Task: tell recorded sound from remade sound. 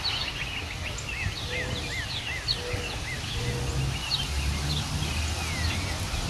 recorded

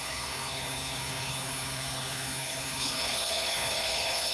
remade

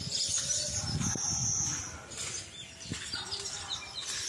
recorded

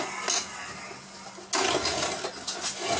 recorded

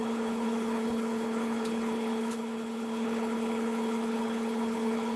remade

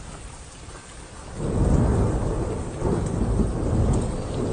recorded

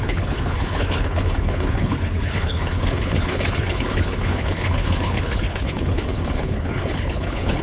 remade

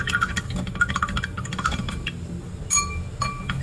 recorded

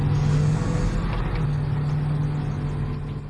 recorded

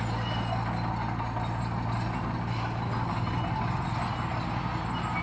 recorded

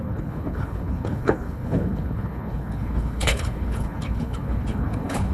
remade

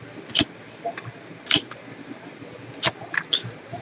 recorded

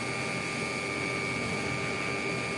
recorded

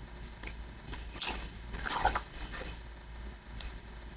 remade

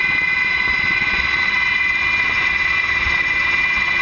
recorded